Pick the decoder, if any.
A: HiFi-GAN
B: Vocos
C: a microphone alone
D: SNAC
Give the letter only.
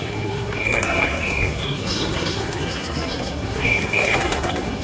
D